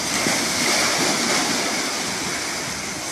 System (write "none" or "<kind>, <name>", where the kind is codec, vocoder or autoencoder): none